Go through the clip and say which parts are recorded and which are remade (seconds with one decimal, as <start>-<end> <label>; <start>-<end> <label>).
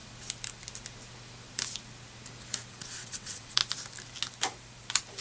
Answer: 0.0-2.7 recorded; 2.7-3.6 remade; 3.6-5.2 recorded